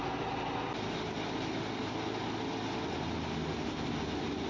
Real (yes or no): yes